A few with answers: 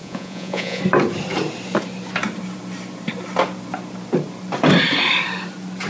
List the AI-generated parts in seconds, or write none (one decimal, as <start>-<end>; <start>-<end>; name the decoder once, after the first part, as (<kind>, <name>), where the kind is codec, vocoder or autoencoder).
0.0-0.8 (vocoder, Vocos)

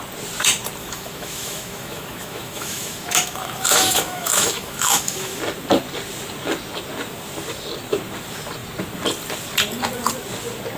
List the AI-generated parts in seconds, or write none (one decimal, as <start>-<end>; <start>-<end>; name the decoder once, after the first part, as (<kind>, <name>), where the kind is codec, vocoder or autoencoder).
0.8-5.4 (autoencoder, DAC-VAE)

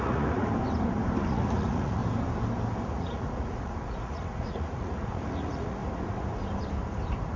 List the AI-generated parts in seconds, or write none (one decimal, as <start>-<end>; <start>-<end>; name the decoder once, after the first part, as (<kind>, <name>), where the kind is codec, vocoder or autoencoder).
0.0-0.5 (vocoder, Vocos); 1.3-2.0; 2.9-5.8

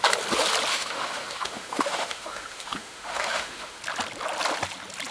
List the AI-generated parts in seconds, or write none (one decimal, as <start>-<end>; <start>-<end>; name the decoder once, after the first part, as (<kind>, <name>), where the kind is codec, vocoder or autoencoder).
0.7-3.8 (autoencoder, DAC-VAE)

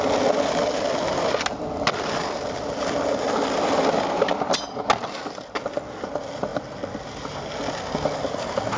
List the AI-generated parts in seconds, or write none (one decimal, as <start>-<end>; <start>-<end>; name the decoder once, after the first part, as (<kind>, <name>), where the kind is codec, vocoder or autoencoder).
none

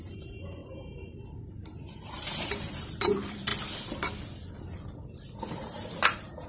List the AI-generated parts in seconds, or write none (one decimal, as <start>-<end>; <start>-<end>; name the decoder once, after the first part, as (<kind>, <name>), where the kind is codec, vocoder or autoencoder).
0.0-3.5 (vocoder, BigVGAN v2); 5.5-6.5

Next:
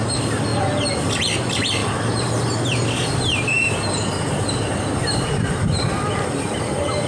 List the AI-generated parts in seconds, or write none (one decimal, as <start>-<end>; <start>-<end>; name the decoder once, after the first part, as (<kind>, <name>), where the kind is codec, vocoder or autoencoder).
1.8-6.1 (vocoder, BigVGAN v2)

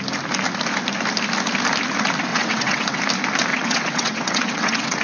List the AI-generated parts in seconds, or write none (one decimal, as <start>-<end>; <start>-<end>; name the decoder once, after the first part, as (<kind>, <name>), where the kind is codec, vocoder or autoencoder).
2.3-3.0 (vocoder, WaveNeXt); 3.5-5.0